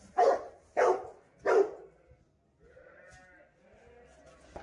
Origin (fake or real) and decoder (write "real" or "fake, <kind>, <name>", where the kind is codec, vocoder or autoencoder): real